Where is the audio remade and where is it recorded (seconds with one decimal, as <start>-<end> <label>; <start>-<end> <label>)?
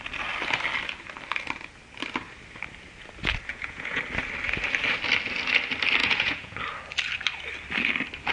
0.0-3.5 recorded; 3.5-4.0 remade; 4.0-6.0 recorded; 6.0-6.6 remade; 6.6-8.3 recorded